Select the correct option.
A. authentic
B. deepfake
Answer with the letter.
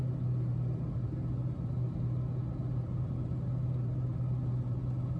A